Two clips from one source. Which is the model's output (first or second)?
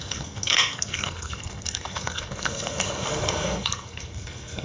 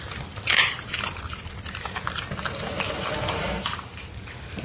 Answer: first